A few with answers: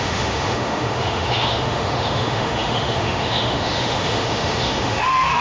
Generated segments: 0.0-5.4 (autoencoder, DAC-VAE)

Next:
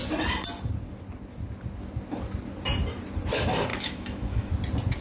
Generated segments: 3.7-4.5 (autoencoder, DAC-VAE)

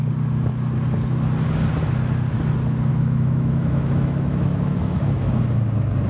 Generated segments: 2.9-5.4 (autoencoder, DAC-VAE)

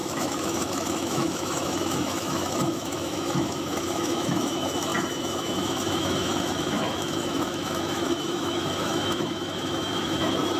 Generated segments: 0.0-10.6 (autoencoder, DAC-VAE)

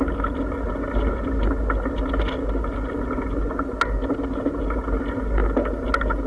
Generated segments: none

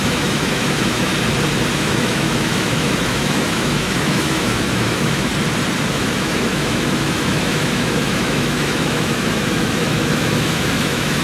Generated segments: 0.0-1.1 (autoencoder, DAC-VAE); 1.8-5.3; 5.9-11.2

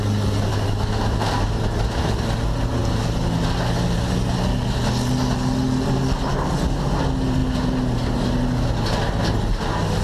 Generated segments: 0.5-1.3 (autoencoder, DAC-VAE)